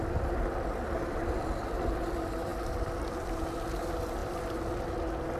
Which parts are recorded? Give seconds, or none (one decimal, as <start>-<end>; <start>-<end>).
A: 0.0-5.4